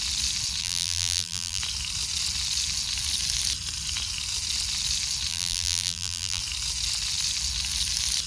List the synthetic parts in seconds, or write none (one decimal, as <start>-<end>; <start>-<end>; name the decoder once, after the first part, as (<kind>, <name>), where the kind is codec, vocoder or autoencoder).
0.6-1.6 (vocoder, BigVGAN v2); 5.3-6.4

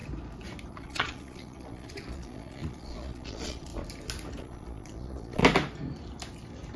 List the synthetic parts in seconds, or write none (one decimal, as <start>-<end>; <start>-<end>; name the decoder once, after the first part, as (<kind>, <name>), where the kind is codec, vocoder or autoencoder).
0.7-3.7 (vocoder, Vocos); 4.4-5.4

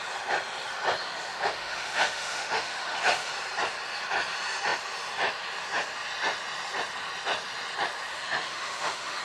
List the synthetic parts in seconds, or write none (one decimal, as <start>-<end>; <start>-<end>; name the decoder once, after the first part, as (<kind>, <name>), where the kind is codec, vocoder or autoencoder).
1.0-3.3 (autoencoder, DAC-VAE); 8.1-9.2

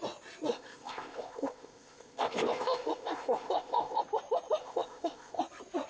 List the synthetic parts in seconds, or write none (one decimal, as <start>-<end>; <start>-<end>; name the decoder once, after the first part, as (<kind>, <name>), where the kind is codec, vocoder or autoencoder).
0.5-4.0 (codec, ZipCodec); 4.6-5.4

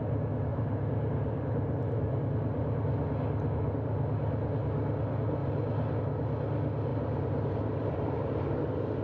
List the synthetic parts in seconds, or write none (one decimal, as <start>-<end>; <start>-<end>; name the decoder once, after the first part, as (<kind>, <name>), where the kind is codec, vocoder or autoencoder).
0.5-2.2 (vocoder, BigVGAN v2); 5.4-6.0; 6.9-8.5

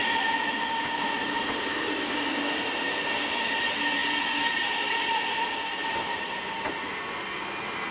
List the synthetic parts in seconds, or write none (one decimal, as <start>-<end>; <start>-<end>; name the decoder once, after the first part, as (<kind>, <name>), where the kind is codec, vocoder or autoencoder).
1.7-2.4 (codec, DAC)

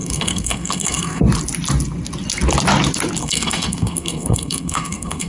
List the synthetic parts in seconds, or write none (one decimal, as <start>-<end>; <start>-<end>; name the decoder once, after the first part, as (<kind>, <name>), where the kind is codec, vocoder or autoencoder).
0.0-1.2 (codec, SNAC); 3.2-5.3